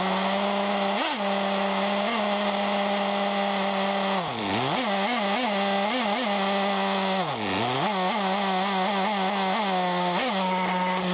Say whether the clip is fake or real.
real